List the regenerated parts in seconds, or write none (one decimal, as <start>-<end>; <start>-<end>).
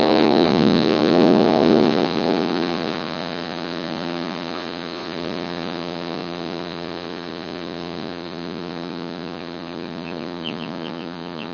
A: 0.0-11.5